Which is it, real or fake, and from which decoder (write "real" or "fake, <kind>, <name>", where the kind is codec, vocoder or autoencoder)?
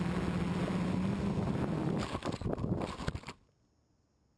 real